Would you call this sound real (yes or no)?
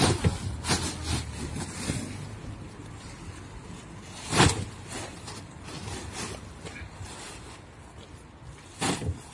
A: yes